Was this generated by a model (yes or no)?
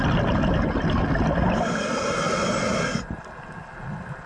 no